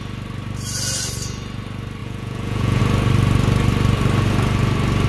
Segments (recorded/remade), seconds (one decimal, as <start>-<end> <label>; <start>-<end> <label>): 0.0-2.0 recorded; 2.0-2.8 remade; 2.8-5.1 recorded